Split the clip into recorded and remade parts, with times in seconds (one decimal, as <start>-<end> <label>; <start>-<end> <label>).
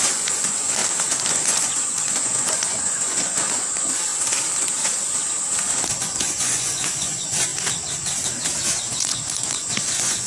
0.0-0.8 remade; 0.8-1.3 recorded; 1.3-4.1 remade; 4.1-6.0 recorded; 6.0-7.5 remade; 7.5-8.9 recorded; 8.9-10.3 remade